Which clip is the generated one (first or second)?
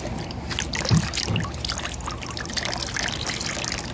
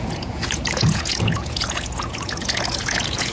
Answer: second